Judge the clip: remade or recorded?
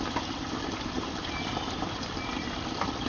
remade